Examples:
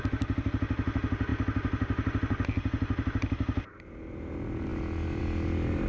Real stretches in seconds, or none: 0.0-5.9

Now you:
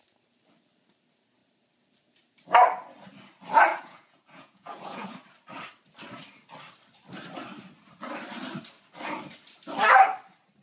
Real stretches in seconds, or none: 0.0-3.7; 5.1-10.6

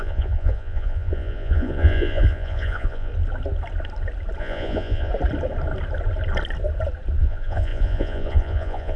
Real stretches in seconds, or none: 3.1-4.4; 5.1-7.2

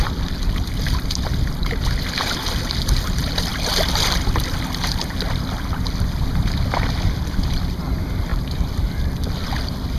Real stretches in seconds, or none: 0.0-10.0

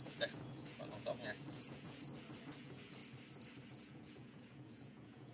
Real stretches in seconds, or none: 2.0-2.6; 3.0-3.7